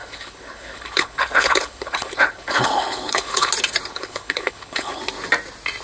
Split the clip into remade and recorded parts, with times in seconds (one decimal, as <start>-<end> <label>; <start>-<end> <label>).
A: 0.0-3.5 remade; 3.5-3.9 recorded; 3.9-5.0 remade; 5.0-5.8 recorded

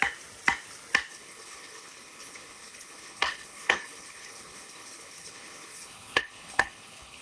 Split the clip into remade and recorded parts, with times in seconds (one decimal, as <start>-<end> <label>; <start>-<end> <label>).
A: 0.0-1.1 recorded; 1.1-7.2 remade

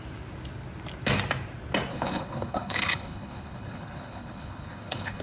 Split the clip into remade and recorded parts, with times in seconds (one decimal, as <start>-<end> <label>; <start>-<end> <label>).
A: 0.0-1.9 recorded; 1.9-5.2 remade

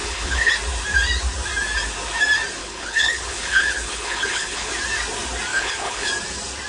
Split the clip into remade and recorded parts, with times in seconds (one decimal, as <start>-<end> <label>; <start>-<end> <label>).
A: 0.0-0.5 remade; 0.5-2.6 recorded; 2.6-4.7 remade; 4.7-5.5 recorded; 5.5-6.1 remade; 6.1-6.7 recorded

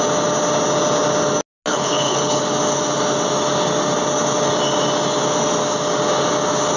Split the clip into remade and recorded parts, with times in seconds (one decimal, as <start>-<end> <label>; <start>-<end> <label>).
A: 0.0-1.7 recorded; 1.7-2.4 remade; 2.4-6.8 recorded

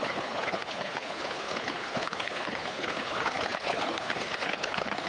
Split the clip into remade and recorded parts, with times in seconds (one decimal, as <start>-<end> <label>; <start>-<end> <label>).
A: 0.0-5.1 remade

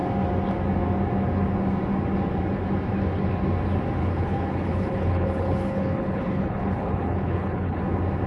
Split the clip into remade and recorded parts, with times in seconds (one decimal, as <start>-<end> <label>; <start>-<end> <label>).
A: 0.0-4.0 recorded; 4.0-7.8 remade; 7.8-8.3 recorded